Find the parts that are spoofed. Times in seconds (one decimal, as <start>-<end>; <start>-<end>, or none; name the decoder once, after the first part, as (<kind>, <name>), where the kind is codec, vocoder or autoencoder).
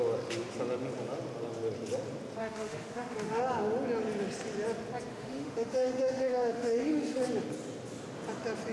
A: 2.4-3.4 (autoencoder, DAC-VAE); 5.1-7.2